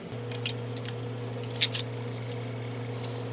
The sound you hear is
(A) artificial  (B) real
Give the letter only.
B